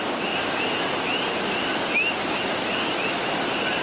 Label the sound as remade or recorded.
recorded